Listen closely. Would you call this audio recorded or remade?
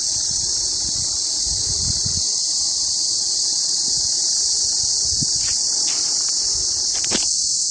recorded